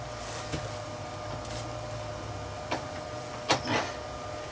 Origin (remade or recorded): recorded